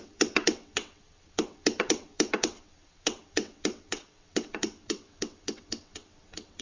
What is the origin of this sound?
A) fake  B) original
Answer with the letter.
A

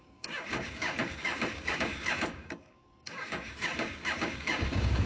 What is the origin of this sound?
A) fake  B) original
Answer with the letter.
A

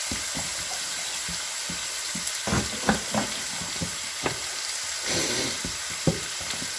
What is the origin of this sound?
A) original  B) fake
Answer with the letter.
A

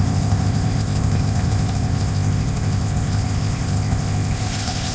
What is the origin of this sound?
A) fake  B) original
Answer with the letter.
A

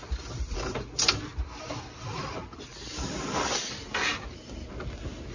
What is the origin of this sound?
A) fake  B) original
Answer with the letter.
B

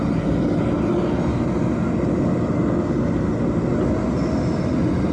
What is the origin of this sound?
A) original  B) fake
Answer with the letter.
A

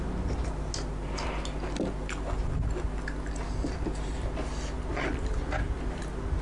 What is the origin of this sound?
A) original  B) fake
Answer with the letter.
A